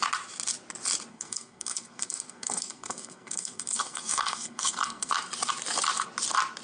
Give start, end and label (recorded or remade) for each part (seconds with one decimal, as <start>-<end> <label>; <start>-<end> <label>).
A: 0.0-1.1 recorded; 1.1-5.1 remade; 5.1-6.6 recorded